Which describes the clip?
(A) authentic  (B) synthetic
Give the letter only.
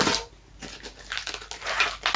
A